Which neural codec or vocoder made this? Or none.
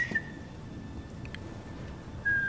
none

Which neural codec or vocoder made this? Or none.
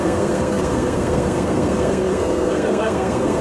codec, SNAC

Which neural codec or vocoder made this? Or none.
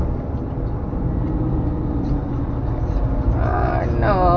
none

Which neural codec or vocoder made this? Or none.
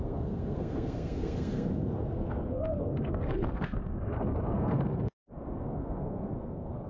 codec, SNAC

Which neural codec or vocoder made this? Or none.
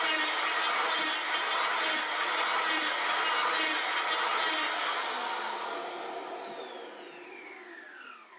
none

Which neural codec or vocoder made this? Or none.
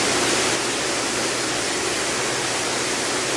none